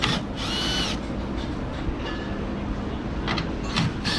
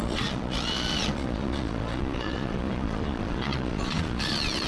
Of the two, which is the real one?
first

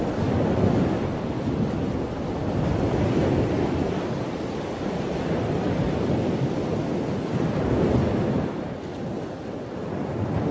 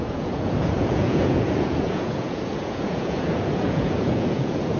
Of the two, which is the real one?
first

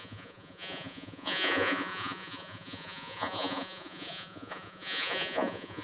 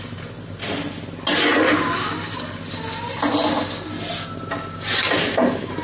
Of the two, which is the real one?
second